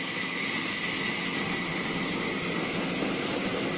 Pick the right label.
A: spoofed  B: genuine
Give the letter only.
B